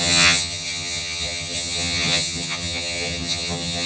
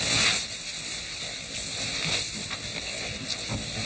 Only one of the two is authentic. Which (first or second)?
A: second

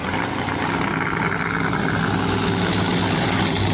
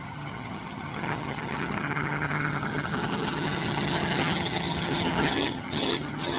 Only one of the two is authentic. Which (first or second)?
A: first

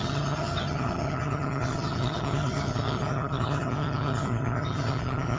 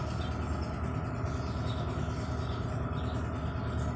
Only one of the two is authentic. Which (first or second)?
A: second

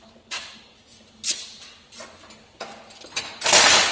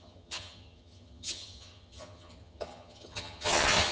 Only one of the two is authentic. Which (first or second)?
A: first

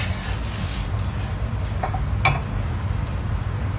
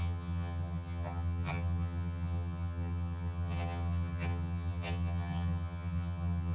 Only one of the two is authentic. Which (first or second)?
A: first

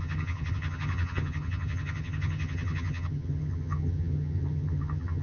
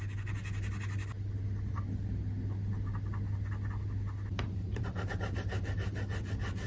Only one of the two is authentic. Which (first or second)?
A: second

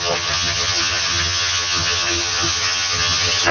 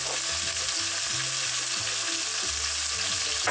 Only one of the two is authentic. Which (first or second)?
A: second